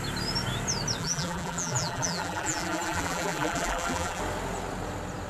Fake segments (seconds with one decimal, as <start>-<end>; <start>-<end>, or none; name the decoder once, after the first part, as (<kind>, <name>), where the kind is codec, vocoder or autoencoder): 1.0-4.2 (vocoder, BigVGAN v2)